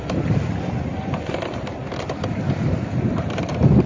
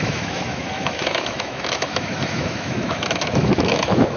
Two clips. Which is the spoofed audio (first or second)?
second